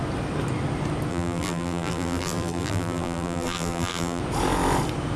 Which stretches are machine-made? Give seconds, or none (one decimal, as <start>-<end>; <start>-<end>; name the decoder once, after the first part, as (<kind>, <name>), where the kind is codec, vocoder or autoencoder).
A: 1.1-4.2 (vocoder, BigVGAN v2)

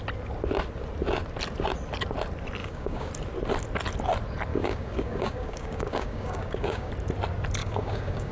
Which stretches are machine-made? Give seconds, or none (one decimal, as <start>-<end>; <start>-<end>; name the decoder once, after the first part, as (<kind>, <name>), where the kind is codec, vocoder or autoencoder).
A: 2.6-3.1 (codec, DAC); 4.5-6.9; 7.6-8.3

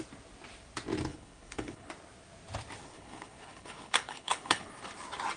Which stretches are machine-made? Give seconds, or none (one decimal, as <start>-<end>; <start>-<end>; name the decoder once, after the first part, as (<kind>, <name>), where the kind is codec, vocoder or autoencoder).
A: 1.1-1.9 (codec, HILCodec); 2.8-4.7